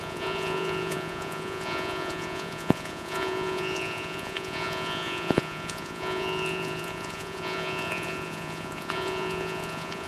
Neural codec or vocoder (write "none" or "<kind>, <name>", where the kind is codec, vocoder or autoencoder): vocoder, Vocos